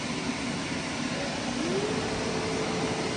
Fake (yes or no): no